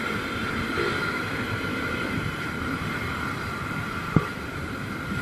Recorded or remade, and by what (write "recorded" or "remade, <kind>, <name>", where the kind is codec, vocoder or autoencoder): remade, vocoder, BigVGAN v2